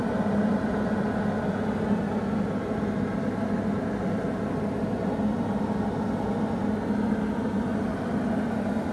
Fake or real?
real